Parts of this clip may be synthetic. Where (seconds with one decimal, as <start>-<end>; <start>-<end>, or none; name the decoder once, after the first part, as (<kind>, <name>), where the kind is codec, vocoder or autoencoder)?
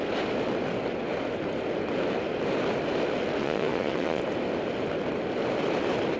3.4-4.2 (vocoder, Vocos)